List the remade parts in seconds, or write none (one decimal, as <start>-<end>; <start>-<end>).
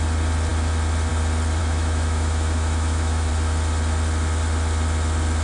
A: 1.6-3.3